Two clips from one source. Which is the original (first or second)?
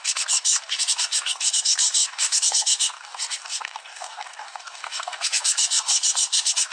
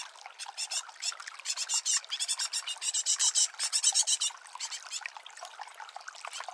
second